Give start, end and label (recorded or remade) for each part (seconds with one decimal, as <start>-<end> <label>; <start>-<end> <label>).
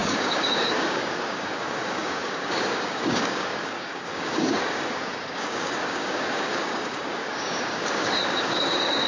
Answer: 0.0-9.1 remade